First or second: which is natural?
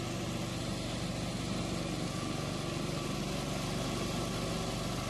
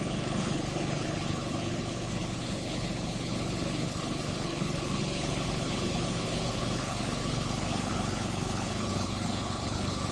first